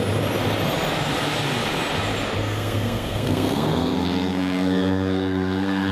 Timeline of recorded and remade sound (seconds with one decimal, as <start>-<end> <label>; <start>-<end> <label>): 0.0-2.4 recorded; 2.4-5.9 remade